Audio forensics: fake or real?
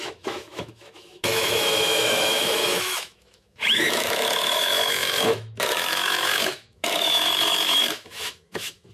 fake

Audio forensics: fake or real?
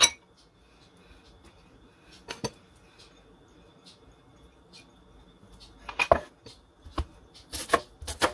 real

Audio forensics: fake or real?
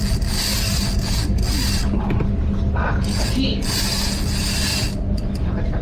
real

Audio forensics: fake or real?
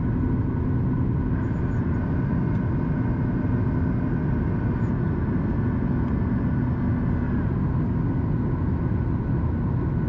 real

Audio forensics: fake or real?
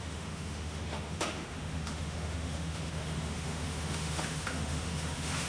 fake